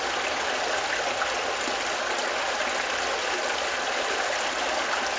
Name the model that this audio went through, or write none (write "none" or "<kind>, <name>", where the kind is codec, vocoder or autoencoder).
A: none